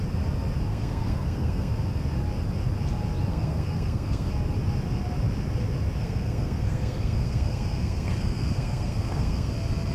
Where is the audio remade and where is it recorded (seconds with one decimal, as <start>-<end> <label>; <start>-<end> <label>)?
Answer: 0.0-0.7 recorded; 0.7-1.7 remade; 1.7-3.3 recorded; 3.3-4.3 remade; 4.3-6.0 recorded; 6.0-9.5 remade; 9.5-9.9 recorded